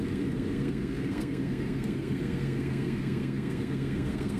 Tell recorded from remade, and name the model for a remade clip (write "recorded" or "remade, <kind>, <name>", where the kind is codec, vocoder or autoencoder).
remade, codec, SNAC